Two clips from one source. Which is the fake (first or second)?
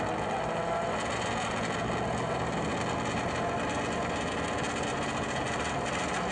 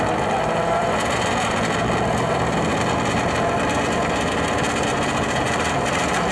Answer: second